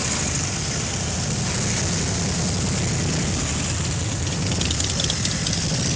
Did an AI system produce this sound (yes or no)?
no